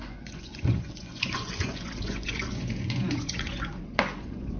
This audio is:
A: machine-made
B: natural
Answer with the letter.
A